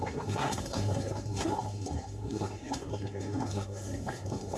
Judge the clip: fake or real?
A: fake